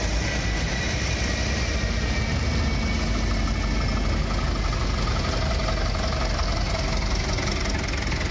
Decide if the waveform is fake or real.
real